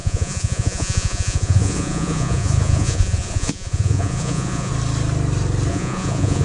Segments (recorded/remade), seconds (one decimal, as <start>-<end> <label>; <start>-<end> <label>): 0.0-4.7 remade; 4.7-5.7 recorded; 5.7-6.4 remade